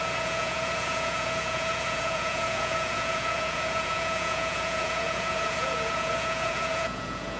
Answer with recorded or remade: remade